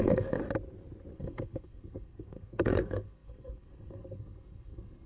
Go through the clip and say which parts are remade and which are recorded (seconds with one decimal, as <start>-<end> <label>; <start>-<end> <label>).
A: 0.0-0.4 remade; 0.4-1.1 recorded; 1.1-5.1 remade